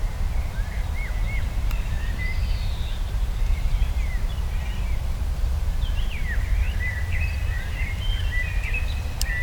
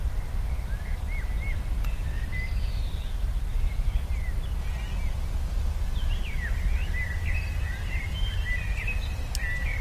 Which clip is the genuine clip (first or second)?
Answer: second